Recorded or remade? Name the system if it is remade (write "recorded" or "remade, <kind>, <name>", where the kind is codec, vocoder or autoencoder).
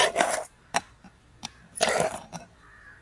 remade, vocoder, BigVGAN v2